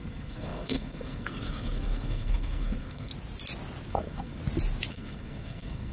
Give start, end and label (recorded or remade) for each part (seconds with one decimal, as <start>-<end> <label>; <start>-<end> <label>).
0.0-3.1 remade; 3.1-3.9 recorded; 3.9-4.4 remade; 4.4-4.9 recorded; 4.9-5.9 remade

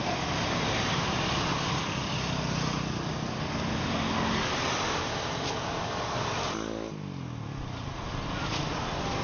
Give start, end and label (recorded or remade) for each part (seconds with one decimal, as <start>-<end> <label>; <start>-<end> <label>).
0.0-0.4 recorded; 0.4-1.2 remade; 1.2-9.2 recorded

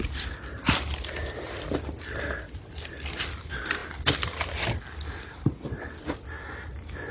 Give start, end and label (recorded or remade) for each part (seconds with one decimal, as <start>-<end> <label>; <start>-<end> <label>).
0.0-7.1 recorded